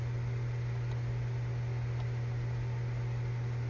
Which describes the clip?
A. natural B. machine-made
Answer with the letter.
A